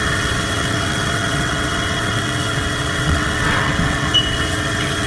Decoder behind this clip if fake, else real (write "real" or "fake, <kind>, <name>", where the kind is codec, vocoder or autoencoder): fake, vocoder, WaveNeXt